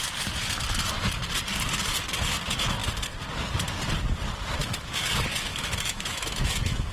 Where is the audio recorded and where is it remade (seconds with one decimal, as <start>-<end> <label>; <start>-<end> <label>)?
0.0-4.6 recorded; 4.6-5.1 remade; 5.1-5.5 recorded; 5.5-6.9 remade